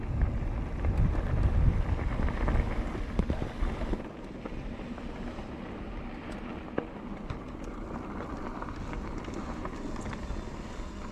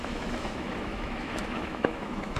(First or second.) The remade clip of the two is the second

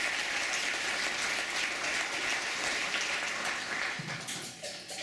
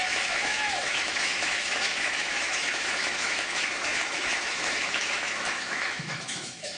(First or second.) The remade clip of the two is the second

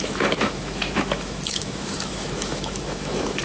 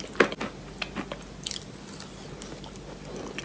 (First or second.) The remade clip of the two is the first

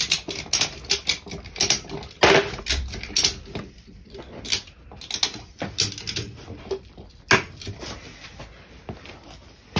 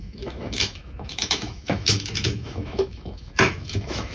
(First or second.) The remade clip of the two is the second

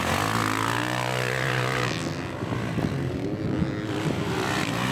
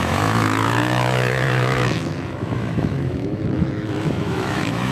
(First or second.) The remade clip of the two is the second